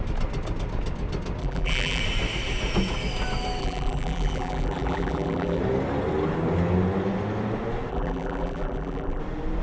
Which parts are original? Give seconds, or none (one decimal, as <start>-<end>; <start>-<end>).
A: 0.0-1.4; 2.0-3.6; 5.6-7.9; 9.2-9.6